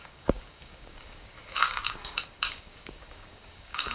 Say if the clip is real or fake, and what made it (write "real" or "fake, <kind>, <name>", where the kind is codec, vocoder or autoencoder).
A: fake, codec, DAC